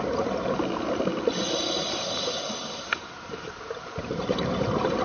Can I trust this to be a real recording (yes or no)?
yes